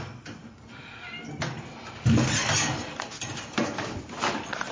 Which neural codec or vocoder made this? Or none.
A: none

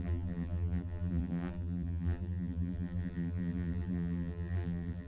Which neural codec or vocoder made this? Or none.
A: vocoder, BigVGAN v2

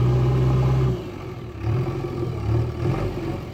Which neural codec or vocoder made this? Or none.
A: vocoder, BigVGAN v2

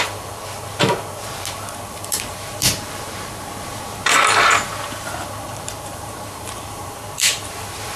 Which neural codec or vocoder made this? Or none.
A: vocoder, BigVGAN v2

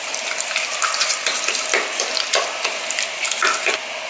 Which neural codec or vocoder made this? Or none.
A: none